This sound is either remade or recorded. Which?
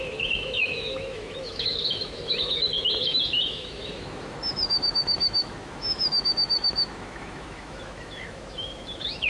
remade